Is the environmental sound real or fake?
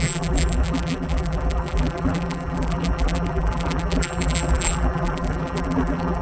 fake